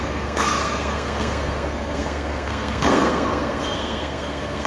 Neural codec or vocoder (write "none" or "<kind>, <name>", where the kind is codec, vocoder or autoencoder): codec, SNAC